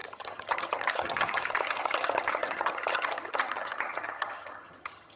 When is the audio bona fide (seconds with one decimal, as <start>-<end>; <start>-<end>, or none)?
none